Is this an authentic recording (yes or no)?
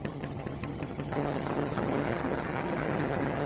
no